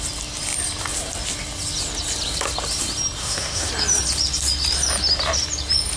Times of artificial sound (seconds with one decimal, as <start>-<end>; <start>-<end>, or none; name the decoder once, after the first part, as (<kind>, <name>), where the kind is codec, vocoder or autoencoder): 3.2-3.7 (autoencoder, DAC-VAE)